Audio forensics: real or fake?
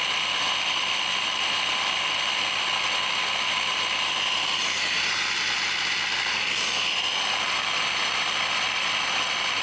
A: real